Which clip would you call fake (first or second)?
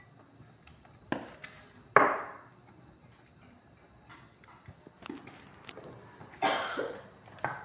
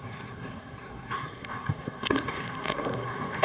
second